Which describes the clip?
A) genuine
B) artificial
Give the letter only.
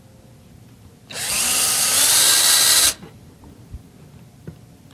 A